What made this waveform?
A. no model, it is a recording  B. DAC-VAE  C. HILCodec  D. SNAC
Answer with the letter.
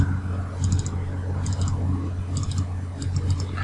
A